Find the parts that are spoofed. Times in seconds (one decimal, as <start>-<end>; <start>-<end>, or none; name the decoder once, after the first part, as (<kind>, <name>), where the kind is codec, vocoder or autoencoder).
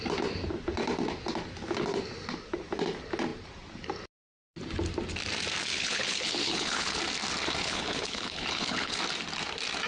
5.6-7.0 (codec, HILCodec); 7.6-9.0